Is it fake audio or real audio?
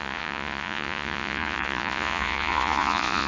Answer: fake